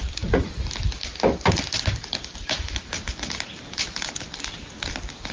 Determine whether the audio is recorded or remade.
remade